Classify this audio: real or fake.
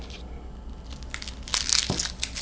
real